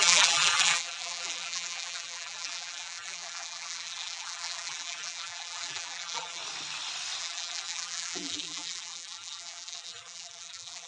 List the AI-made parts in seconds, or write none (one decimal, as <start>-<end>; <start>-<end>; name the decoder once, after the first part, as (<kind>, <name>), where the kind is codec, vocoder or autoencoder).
0.0-6.4 (vocoder, BigVGAN v2); 7.2-10.9